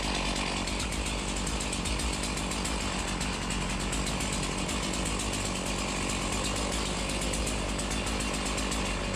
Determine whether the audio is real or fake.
real